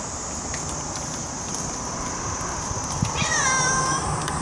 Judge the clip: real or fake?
real